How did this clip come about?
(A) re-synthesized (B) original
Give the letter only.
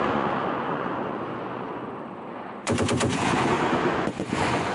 A